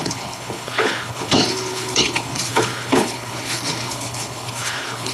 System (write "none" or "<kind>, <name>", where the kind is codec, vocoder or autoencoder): codec, HILCodec